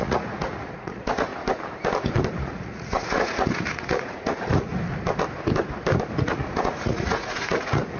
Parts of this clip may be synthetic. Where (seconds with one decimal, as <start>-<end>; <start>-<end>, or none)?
0.0-1.3; 2.4-4.7; 6.2-8.0